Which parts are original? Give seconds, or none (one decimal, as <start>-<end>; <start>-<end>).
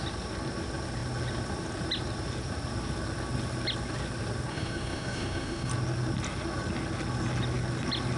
0.0-4.5; 5.7-8.2